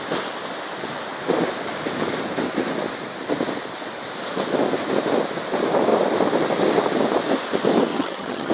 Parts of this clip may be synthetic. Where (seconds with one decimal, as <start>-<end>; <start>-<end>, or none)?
7.9-8.5